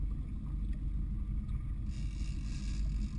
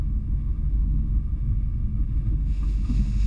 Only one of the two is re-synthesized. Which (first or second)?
second